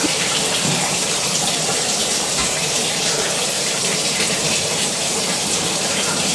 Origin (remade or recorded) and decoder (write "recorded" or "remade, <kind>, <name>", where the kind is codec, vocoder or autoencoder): remade, vocoder, BigVGAN v2